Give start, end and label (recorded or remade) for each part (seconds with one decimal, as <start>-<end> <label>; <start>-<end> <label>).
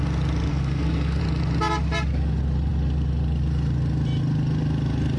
0.0-0.5 recorded; 0.5-1.2 remade; 1.2-5.2 recorded